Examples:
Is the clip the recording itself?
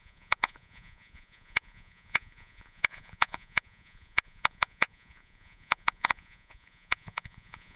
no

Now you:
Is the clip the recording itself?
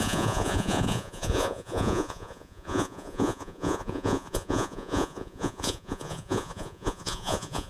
no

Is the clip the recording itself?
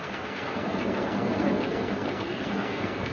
no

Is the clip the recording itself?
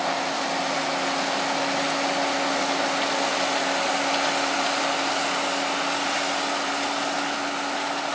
yes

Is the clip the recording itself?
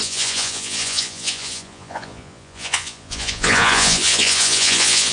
no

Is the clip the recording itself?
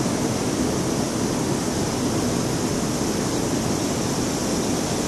yes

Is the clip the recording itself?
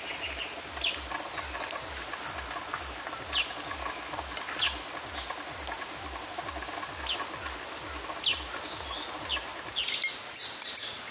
yes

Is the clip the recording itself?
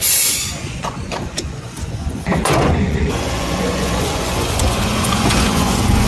no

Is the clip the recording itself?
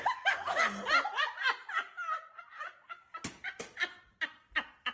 yes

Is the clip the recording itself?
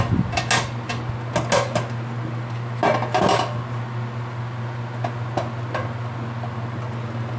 yes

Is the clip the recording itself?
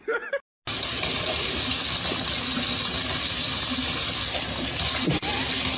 yes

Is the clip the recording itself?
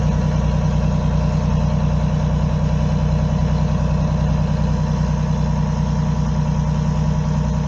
yes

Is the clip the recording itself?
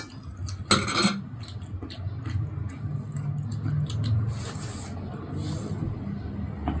yes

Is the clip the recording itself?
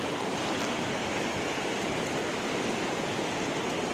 yes